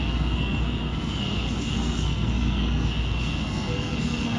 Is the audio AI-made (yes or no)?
yes